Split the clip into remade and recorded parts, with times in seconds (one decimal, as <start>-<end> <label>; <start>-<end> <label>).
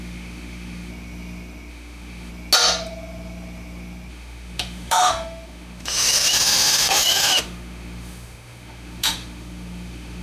0.0-0.9 remade; 0.9-1.7 recorded; 1.7-2.3 remade; 2.3-4.1 recorded; 4.1-10.2 remade